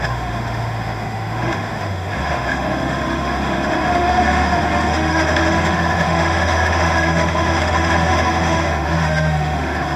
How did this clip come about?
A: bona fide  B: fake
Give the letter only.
B